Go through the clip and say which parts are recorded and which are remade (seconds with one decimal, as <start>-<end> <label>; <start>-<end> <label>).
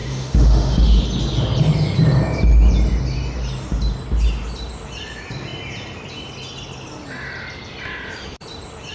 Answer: 0.0-1.0 remade; 1.0-8.9 recorded